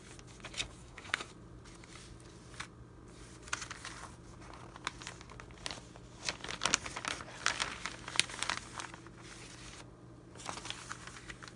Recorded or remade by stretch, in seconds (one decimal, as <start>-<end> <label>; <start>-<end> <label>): 0.0-0.8 recorded; 0.8-1.3 remade; 1.3-11.6 recorded